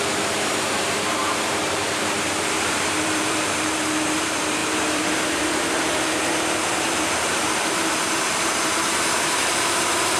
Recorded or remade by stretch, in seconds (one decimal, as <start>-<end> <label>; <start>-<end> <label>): 0.0-10.2 remade